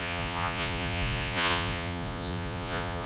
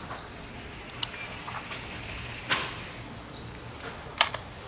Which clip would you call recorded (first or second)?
second